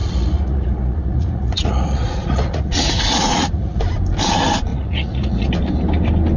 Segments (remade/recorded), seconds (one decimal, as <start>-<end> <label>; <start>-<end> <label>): 0.0-3.8 remade; 3.8-4.7 recorded; 4.7-5.5 remade; 5.5-6.4 recorded